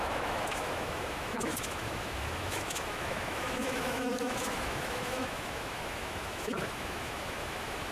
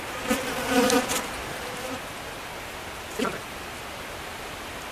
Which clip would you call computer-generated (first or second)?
first